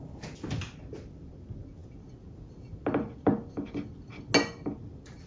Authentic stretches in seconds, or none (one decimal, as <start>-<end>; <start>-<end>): 0.0-5.3